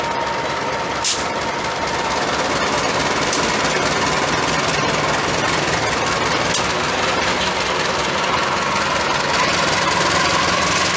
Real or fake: real